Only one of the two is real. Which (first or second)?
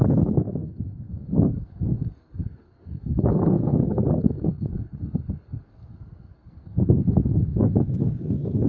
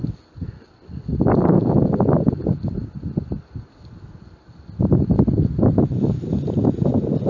second